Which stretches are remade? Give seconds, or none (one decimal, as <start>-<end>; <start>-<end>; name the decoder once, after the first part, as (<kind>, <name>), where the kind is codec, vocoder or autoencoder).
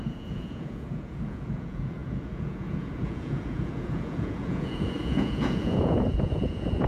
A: 0.0-6.9 (vocoder, Vocos)